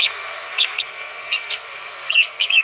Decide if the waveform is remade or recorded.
remade